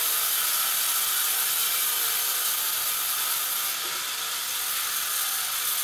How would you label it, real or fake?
real